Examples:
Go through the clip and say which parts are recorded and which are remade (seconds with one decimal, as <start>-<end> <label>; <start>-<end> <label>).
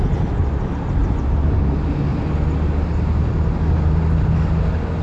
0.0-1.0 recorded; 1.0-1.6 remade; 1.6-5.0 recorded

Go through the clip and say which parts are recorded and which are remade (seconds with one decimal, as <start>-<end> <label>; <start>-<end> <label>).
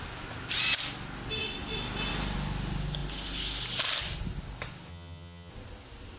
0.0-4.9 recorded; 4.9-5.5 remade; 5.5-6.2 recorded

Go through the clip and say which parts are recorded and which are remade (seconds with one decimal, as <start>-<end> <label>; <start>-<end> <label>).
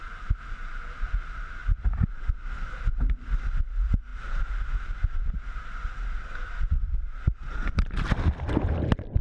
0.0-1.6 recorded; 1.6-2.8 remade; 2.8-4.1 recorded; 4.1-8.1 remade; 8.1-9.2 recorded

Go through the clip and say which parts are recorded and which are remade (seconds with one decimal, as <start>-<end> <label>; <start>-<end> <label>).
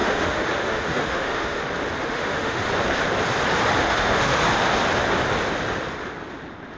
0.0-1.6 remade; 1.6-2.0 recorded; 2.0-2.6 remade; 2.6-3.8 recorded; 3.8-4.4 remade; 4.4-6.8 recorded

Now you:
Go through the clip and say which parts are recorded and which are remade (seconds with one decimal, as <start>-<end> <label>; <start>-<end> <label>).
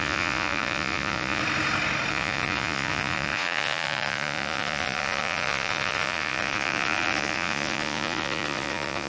0.0-1.4 remade; 1.4-2.1 recorded; 2.1-9.1 remade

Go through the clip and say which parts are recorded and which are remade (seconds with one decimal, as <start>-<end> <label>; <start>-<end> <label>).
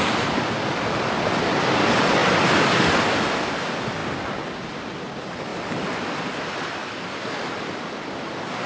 0.0-8.7 recorded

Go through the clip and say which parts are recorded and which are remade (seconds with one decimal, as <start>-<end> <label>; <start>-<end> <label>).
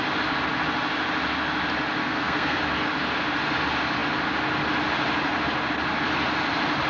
0.0-2.0 recorded; 2.0-2.6 remade; 2.6-6.9 recorded